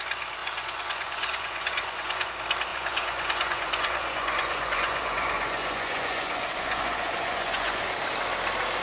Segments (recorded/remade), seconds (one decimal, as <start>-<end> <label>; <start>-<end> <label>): 0.0-0.4 recorded; 0.4-2.3 remade; 2.3-2.7 recorded; 2.7-7.8 remade; 7.8-8.8 recorded